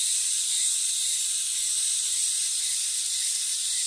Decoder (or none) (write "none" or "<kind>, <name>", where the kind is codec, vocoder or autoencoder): vocoder, BigVGAN v2